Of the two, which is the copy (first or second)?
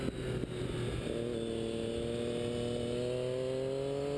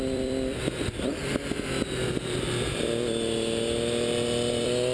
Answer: second